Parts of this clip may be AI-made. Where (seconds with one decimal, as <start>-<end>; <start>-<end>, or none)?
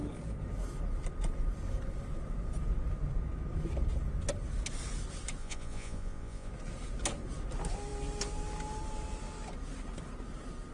5.4-6.5